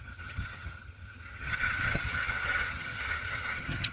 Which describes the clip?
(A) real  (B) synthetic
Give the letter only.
B